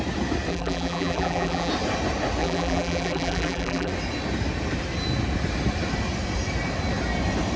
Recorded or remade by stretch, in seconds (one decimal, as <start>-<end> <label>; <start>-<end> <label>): 0.0-0.5 recorded; 0.5-1.7 remade; 1.7-2.4 recorded; 2.4-3.9 remade; 3.9-7.6 recorded